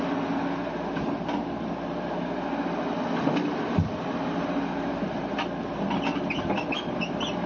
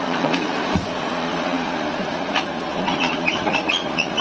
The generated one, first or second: second